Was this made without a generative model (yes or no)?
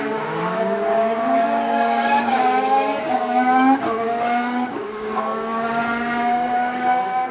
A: no